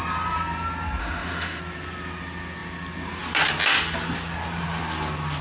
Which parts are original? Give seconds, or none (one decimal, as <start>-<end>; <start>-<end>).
0.0-1.0; 1.6-5.4